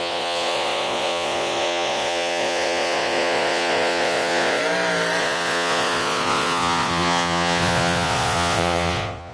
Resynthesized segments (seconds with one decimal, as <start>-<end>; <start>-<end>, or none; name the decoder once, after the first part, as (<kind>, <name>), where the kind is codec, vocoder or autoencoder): 0.0-4.6 (vocoder, Vocos); 5.2-9.3